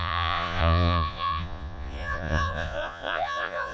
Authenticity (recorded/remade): remade